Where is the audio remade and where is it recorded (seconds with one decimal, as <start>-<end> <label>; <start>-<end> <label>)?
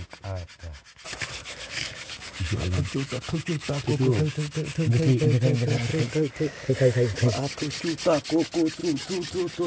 0.0-1.4 recorded; 1.4-5.2 remade; 5.2-5.9 recorded; 5.9-6.7 remade; 6.7-9.7 recorded